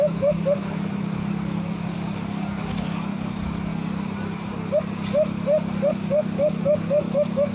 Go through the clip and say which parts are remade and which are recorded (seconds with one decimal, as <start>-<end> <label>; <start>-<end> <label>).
0.0-3.7 remade; 3.7-5.9 recorded; 5.9-7.5 remade